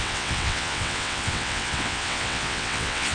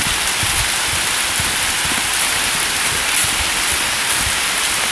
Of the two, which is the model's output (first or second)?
first